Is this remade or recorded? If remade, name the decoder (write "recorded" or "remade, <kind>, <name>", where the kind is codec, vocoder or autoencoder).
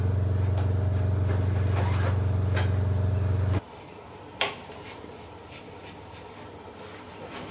recorded